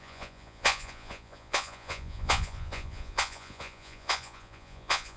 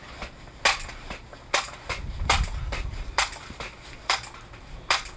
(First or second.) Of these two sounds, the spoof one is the first